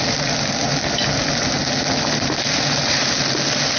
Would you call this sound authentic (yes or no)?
yes